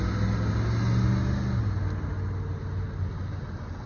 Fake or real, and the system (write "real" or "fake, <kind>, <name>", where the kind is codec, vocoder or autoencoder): real